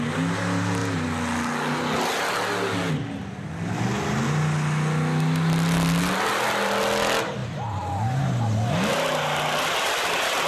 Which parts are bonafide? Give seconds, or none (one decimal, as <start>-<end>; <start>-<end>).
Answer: 0.0-10.5